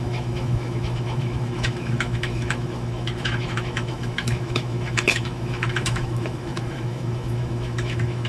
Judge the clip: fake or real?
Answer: fake